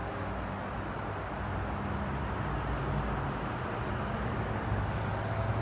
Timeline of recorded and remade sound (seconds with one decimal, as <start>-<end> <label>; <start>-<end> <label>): 0.0-5.6 recorded